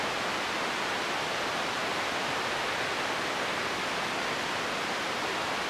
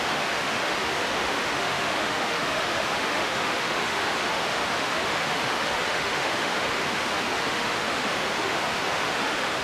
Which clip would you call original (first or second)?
first